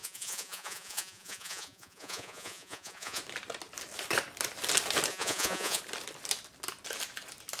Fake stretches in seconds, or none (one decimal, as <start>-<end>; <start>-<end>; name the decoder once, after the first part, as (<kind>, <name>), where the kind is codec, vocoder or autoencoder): 0.0-3.2 (vocoder, Vocos); 5.1-5.8